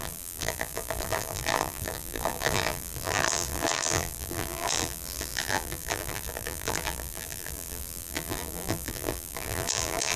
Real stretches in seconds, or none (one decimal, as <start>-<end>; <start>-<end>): none